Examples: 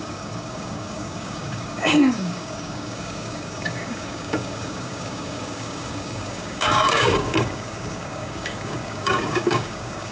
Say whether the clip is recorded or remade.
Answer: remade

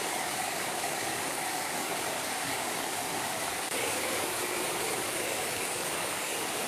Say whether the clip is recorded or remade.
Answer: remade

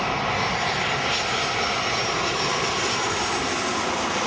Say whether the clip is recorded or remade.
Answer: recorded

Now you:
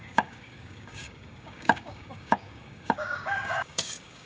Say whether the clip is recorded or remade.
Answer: remade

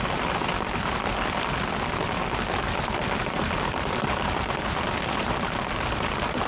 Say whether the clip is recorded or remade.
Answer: recorded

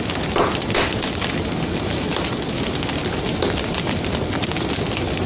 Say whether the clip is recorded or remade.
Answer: recorded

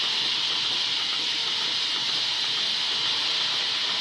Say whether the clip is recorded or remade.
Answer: recorded